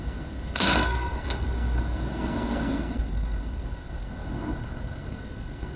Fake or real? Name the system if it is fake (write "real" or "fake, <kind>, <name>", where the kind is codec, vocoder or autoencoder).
fake, codec, SNAC